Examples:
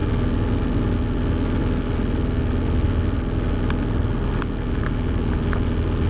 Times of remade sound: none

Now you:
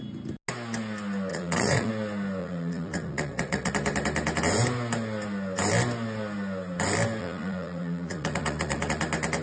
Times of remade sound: 1.3-1.9 (vocoder, Vocos); 2.4-3.7; 7.2-9.0

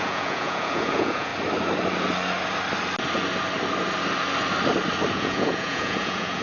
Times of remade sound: 0.0-1.3 (vocoder, Vocos); 5.1-6.4

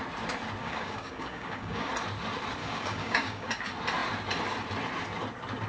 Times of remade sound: 0.6-1.9 (codec, DAC); 2.6-3.5

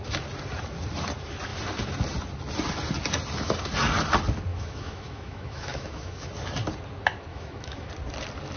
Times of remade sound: 4.5-6.3 (autoencoder, DAC-VAE); 7.3-7.9

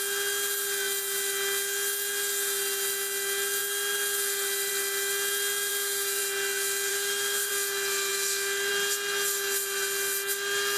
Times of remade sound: 5.7-6.2 (autoencoder, DAC-VAE); 6.9-7.5

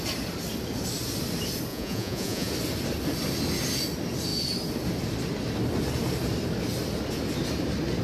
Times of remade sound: 1.7-2.5 (vocoder, Vocos)

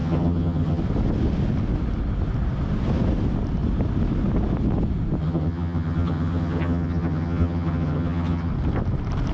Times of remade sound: 0.0-0.8 (vocoder, HiFi-GAN); 5.2-8.5